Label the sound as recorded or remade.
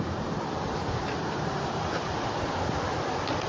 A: recorded